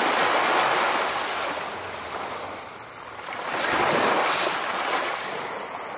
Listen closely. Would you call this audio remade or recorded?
recorded